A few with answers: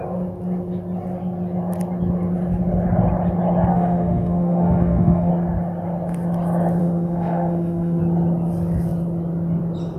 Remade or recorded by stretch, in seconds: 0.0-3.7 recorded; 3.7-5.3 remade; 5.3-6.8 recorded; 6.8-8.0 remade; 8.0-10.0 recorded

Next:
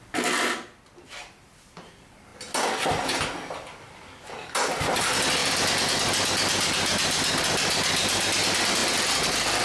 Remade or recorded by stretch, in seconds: 0.0-9.6 recorded

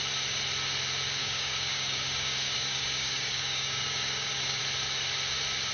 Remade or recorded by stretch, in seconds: 0.0-1.2 recorded; 1.2-4.6 remade; 4.6-5.7 recorded

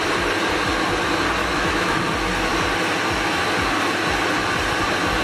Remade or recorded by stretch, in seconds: 0.0-1.4 recorded; 1.4-2.0 remade; 2.0-5.2 recorded

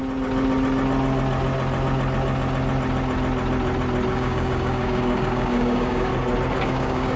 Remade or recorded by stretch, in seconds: 0.0-4.1 recorded; 4.1-6.1 remade; 6.1-6.6 recorded; 6.6-7.2 remade

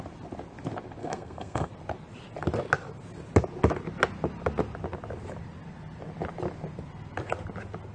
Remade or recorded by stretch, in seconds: 0.0-1.0 recorded; 1.0-1.7 remade; 1.7-7.9 recorded

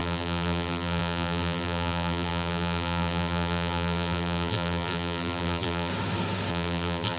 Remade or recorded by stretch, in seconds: 0.0-5.9 remade; 5.9-6.5 recorded; 6.5-7.2 remade